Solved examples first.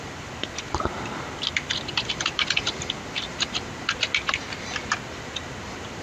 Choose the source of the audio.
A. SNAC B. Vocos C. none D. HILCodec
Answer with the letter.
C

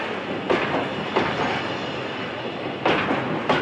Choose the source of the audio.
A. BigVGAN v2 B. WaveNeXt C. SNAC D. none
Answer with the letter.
D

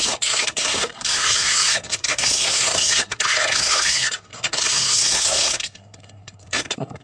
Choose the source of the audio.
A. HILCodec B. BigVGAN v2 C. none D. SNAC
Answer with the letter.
D